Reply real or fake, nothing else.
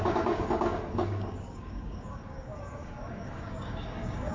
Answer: fake